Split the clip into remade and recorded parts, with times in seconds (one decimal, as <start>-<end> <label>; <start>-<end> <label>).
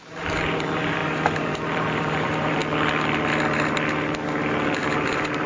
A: 0.0-2.6 remade; 2.6-4.8 recorded; 4.8-5.5 remade